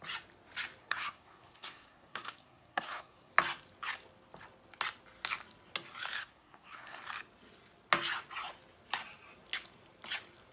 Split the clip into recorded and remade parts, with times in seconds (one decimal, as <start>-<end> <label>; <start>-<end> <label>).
0.0-0.8 recorded; 0.8-3.3 remade; 3.3-6.2 recorded; 6.2-7.0 remade; 7.0-10.5 recorded